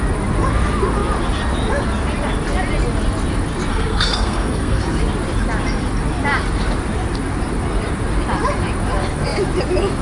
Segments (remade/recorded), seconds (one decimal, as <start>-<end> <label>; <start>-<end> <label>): 0.0-3.7 recorded; 3.7-4.8 remade; 4.8-10.0 recorded